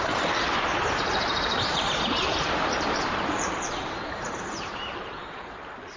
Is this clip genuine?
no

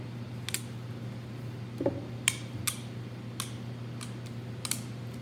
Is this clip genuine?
yes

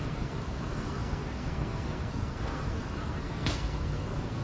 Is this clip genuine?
no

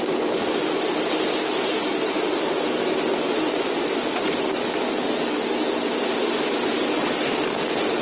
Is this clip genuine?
yes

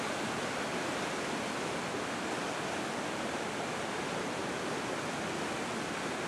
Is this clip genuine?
yes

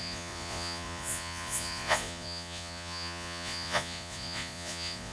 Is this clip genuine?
no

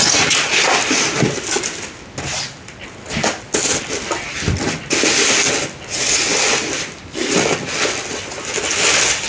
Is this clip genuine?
yes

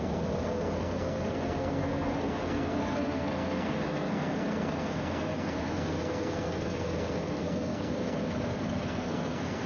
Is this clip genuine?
no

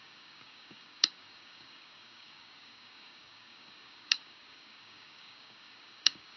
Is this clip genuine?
no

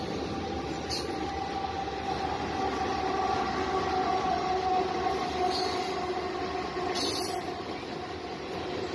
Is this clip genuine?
yes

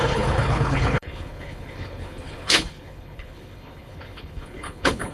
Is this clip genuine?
no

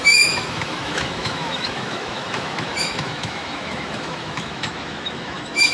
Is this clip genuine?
no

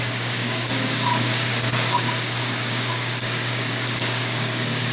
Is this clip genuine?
no